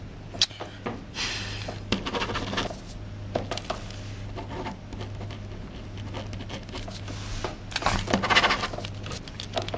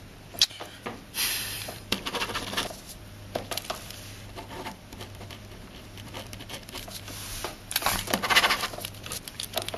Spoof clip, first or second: second